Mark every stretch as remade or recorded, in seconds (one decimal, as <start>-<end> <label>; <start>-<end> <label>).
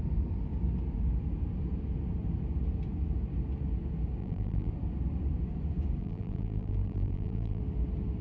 0.0-4.2 recorded; 4.2-4.7 remade; 4.7-6.0 recorded; 6.0-7.6 remade; 7.6-8.2 recorded